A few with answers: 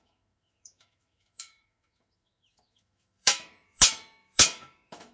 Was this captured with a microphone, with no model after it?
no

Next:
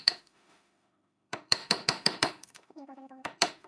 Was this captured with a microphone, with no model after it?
no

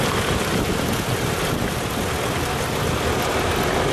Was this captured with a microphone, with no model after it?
yes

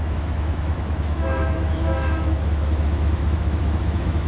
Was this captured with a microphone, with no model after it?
no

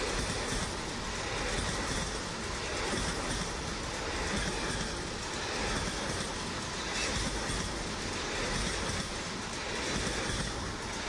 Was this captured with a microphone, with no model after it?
yes